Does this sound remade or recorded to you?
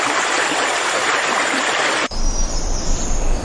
recorded